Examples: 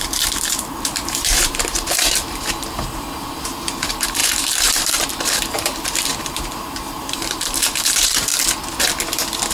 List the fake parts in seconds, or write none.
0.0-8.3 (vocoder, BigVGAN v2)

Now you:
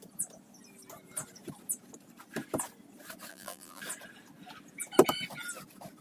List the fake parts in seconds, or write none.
3.3-3.8 (vocoder, BigVGAN v2)

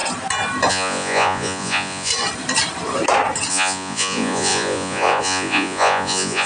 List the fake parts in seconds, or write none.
0.7-2.1 (vocoder, Vocos); 3.5-6.5

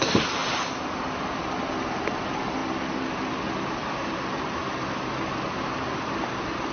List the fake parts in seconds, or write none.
none

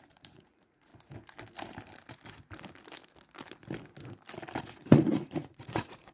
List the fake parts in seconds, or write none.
0.0-0.9 (vocoder, Vocos); 4.6-6.1

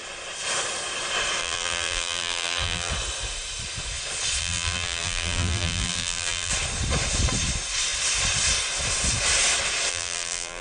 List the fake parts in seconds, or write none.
1.4-2.9 (vocoder, BigVGAN v2); 4.4-6.5; 9.9-10.6